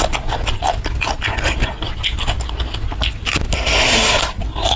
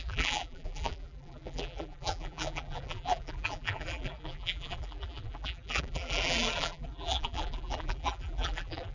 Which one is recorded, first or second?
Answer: first